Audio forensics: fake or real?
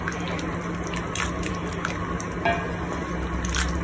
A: real